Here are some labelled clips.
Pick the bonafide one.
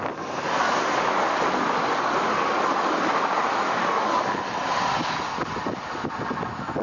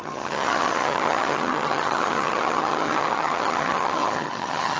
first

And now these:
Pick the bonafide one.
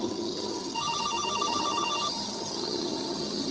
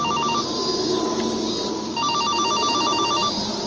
second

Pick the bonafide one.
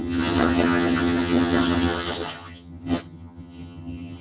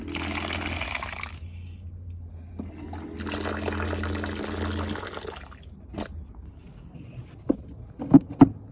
second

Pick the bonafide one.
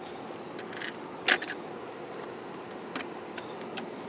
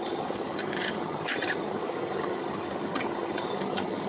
first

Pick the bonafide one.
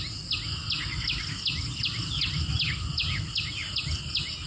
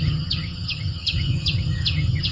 first